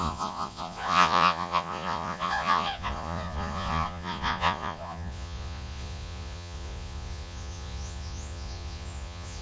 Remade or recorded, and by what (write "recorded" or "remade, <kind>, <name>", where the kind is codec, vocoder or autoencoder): remade, vocoder, Vocos